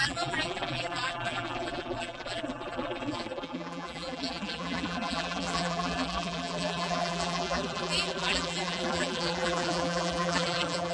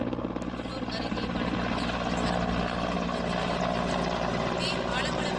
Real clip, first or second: second